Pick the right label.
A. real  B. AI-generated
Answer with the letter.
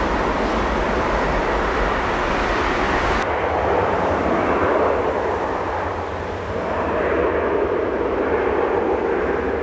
A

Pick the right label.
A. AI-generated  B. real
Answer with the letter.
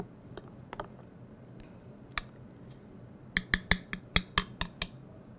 B